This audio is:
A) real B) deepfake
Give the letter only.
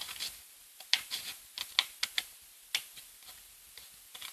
A